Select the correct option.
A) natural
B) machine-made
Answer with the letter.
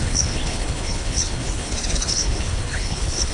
B